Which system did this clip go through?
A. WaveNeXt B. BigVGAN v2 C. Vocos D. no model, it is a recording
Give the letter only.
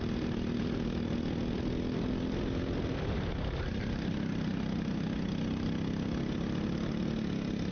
D